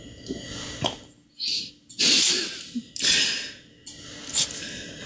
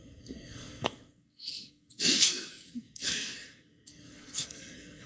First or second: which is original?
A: first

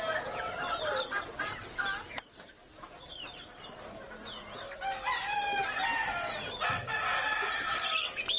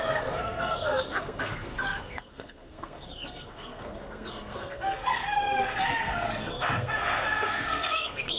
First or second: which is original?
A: first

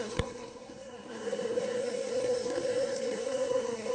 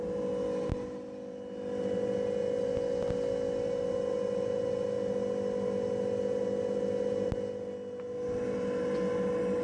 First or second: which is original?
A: second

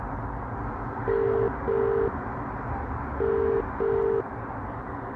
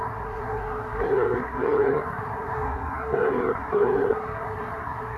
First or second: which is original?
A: first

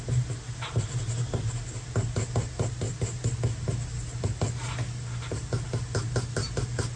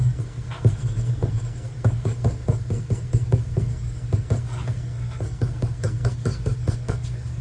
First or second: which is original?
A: first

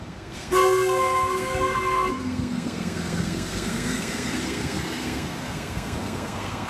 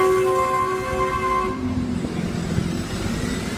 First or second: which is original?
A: second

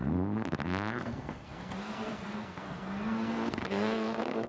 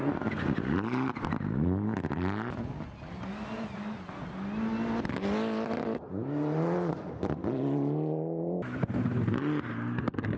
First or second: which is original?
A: second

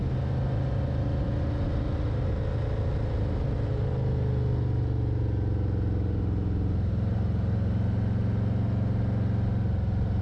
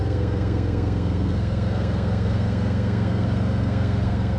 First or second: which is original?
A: first